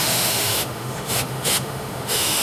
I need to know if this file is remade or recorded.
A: remade